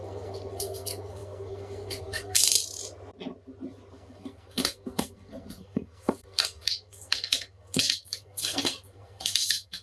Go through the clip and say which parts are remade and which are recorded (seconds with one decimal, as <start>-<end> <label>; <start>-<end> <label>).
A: 0.0-2.6 remade; 2.6-3.9 recorded; 3.9-9.8 remade